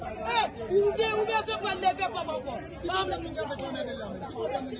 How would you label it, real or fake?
real